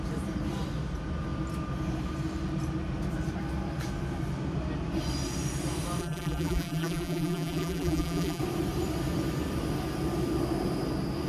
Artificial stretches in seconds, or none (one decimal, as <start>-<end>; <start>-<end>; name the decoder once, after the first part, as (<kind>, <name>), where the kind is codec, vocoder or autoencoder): 6.0-8.4 (vocoder, BigVGAN v2)